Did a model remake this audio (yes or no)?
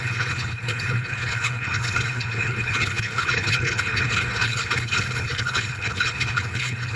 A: yes